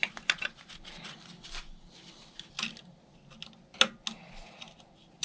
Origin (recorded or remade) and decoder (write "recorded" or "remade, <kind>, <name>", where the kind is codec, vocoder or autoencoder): recorded